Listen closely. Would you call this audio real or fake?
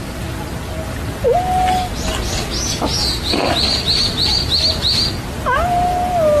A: real